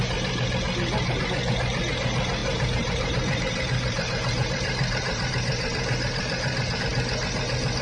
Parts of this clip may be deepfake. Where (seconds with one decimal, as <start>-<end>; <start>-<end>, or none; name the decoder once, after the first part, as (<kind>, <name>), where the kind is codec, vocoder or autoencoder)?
2.4-6.8 (vocoder, BigVGAN v2)